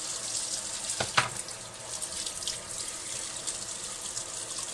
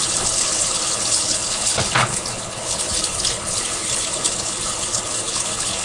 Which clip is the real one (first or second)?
first